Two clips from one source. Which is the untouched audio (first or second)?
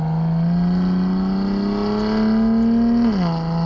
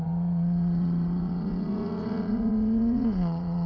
first